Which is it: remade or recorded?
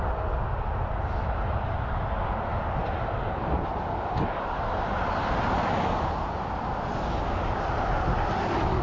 recorded